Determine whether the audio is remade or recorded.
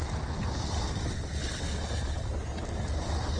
recorded